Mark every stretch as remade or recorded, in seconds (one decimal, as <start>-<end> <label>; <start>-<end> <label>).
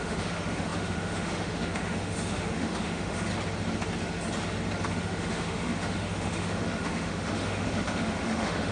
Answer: 0.0-3.3 remade; 3.3-4.9 recorded; 4.9-8.7 remade